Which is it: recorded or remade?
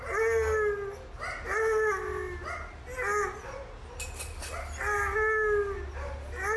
recorded